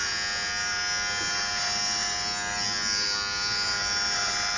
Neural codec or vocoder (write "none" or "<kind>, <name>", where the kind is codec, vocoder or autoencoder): none